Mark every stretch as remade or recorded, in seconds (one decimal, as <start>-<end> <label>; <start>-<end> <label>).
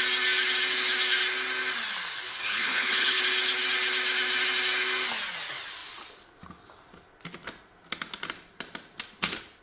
0.0-2.3 recorded; 2.3-3.2 remade; 3.2-9.6 recorded